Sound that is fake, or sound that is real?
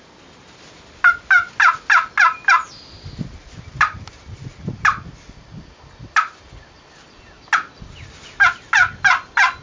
real